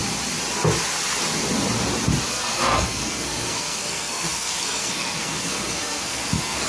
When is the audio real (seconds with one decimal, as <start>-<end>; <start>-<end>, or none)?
0.0-2.3